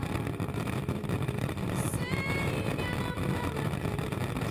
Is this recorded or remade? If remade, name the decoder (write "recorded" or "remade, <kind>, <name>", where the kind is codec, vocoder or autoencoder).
remade, vocoder, BigVGAN v2